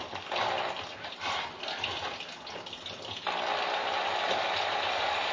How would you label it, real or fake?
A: real